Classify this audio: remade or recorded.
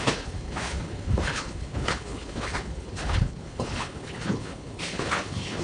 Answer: remade